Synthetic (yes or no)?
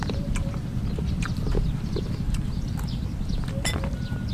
no